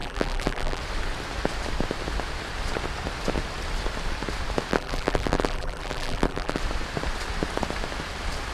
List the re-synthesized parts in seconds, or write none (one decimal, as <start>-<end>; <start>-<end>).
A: 0.0-0.8; 4.7-6.6